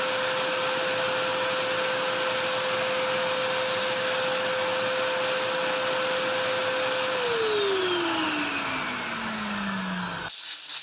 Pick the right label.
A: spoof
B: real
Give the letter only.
B